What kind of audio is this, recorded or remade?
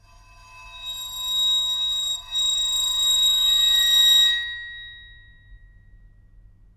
recorded